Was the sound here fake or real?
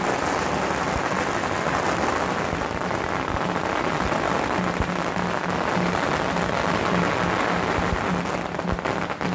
real